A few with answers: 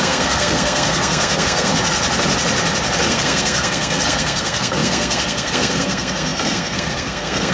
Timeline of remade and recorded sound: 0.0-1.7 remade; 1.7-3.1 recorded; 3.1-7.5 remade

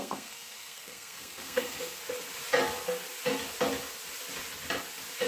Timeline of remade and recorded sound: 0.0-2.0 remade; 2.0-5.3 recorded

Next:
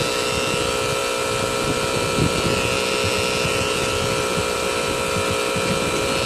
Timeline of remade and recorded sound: 0.0-6.3 recorded

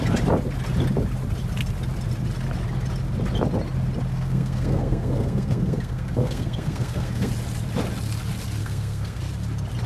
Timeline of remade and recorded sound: 0.0-4.1 recorded; 4.1-7.3 remade; 7.3-8.6 recorded; 8.6-9.2 remade; 9.2-9.9 recorded

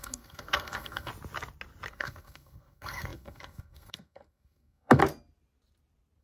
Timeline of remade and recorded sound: 0.0-1.1 remade; 1.1-1.9 recorded; 1.9-5.0 remade; 5.0-6.2 recorded

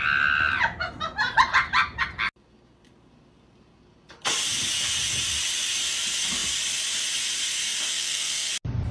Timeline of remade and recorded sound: 0.0-7.9 recorded; 7.9-8.5 remade; 8.5-8.9 recorded

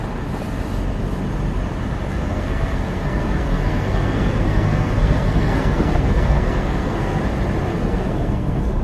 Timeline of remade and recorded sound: 0.0-2.1 recorded; 2.1-7.2 remade; 7.2-7.7 recorded; 7.7-8.8 remade

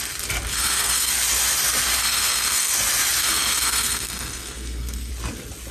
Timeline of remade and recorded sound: 0.0-0.5 recorded; 0.5-1.1 remade; 1.1-2.0 recorded; 2.0-2.7 remade; 2.7-3.2 recorded; 3.2-5.1 remade; 5.1-5.7 recorded